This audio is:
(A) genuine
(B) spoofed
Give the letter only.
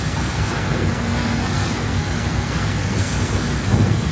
B